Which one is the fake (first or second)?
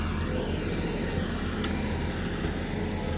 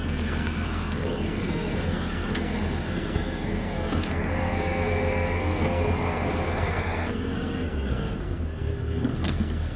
second